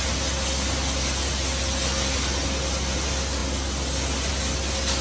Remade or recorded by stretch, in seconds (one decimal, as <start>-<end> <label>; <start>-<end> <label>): 0.0-5.0 recorded